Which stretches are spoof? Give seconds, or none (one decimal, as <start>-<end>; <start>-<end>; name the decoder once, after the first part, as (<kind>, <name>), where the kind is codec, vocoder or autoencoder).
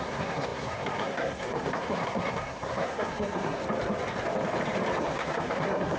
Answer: 0.0-3.6 (codec, SNAC); 5.0-6.0